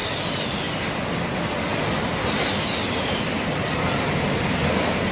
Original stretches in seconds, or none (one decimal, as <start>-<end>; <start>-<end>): 0.7-5.1